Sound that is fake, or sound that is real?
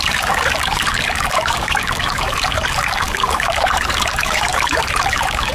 fake